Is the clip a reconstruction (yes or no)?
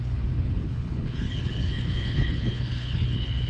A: yes